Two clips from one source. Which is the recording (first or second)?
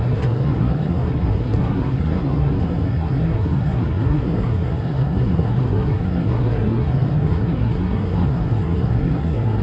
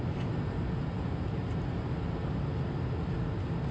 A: second